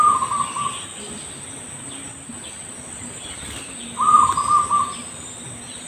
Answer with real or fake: real